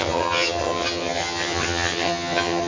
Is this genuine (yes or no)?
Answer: no